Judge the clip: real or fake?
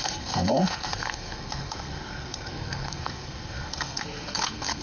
fake